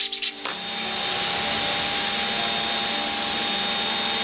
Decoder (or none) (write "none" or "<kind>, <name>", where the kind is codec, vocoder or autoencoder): none